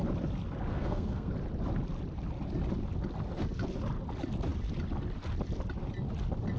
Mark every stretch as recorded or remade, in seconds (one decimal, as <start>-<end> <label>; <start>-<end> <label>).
0.0-0.7 recorded; 0.7-1.3 remade; 1.3-6.6 recorded